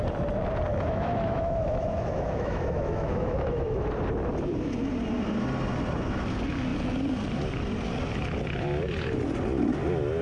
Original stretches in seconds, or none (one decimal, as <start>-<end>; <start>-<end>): 0.0-0.7; 3.9-10.2